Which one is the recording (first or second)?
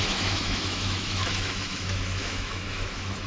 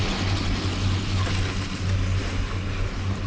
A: second